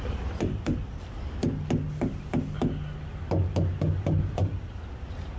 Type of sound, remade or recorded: recorded